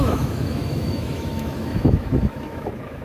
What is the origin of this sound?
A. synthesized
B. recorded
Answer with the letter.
A